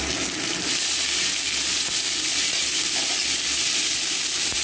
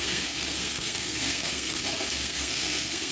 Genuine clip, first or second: first